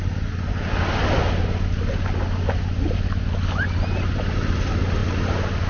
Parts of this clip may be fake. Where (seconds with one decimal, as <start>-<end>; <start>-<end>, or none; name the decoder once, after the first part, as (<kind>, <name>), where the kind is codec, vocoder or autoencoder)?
none